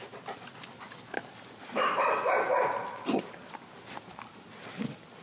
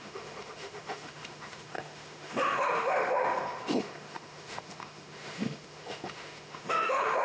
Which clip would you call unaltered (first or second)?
first